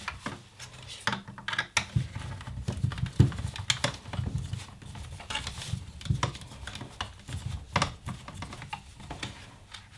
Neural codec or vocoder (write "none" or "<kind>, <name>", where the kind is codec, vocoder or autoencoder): none